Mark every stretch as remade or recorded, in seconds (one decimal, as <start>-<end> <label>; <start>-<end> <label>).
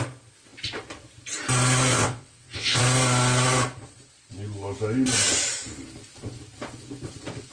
0.0-1.9 recorded; 1.9-2.8 remade; 2.8-7.5 recorded